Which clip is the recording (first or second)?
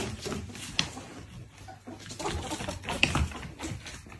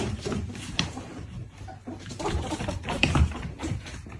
first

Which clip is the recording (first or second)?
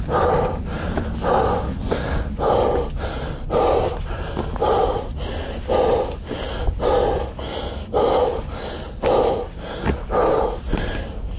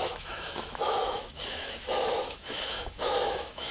first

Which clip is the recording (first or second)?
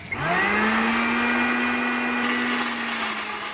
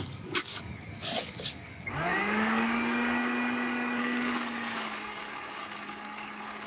first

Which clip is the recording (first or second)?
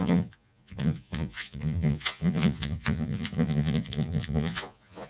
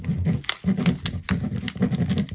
second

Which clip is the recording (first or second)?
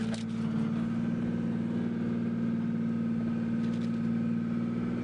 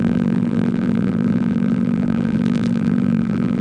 first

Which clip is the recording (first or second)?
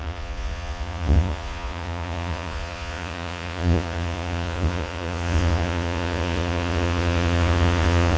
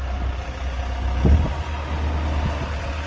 second